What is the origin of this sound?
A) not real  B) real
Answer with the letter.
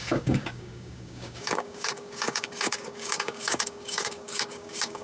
A